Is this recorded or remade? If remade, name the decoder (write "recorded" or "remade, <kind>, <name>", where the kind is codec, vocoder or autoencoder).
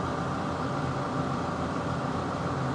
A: recorded